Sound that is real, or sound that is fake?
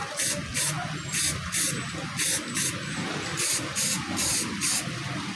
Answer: real